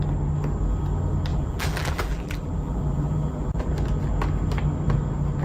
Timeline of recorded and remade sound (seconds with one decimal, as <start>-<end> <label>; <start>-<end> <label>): 0.0-1.3 recorded; 1.3-3.7 remade; 3.7-5.4 recorded